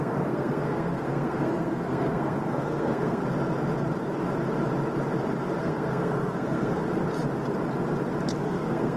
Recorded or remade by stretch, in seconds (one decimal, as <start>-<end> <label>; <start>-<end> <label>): 0.0-3.2 remade; 3.2-5.6 recorded; 5.6-6.8 remade; 6.8-8.4 recorded; 8.4-9.0 remade